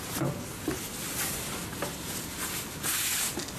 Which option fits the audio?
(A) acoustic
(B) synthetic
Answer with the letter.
A